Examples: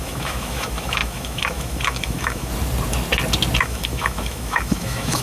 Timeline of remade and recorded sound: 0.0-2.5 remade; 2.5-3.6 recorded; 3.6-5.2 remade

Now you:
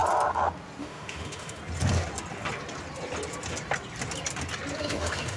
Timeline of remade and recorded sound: 0.0-0.8 recorded; 0.8-1.6 remade; 1.6-4.8 recorded; 4.8-5.4 remade

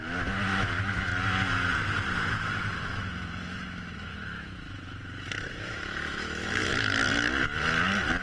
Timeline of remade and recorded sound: 0.0-1.1 remade; 1.1-2.4 recorded; 2.4-7.0 remade; 7.0-8.2 recorded